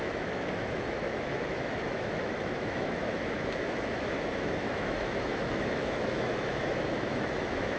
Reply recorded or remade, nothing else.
remade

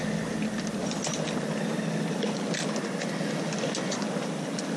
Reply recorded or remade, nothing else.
recorded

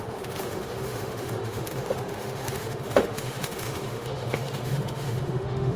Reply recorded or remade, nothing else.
remade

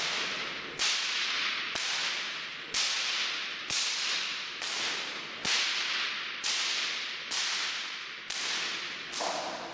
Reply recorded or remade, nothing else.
recorded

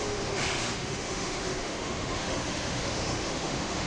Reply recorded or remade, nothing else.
remade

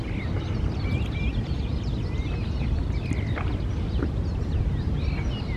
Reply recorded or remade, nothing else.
recorded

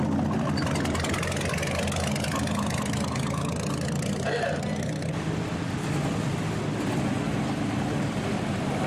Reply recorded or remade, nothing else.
recorded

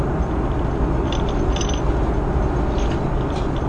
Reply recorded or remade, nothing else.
recorded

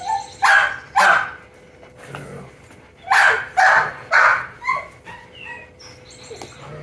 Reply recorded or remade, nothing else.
recorded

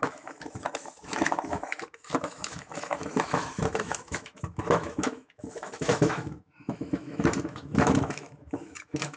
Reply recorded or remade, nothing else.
remade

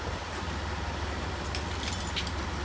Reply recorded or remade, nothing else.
recorded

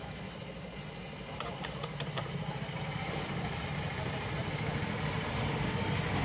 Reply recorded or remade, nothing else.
recorded